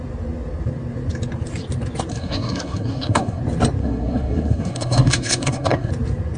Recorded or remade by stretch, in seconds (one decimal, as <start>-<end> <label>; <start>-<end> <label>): 0.0-2.1 recorded; 2.1-3.4 remade; 3.4-3.8 recorded; 3.8-5.9 remade; 5.9-6.4 recorded